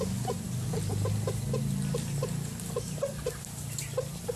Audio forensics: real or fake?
fake